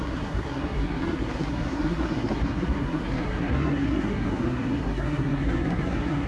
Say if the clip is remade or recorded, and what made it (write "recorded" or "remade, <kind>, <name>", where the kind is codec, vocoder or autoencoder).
remade, codec, SNAC